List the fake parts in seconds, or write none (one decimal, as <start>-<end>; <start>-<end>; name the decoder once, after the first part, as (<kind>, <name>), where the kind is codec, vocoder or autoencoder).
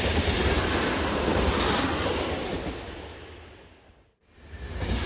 0.0-0.6 (vocoder, BigVGAN v2); 2.1-2.5; 3.9-5.1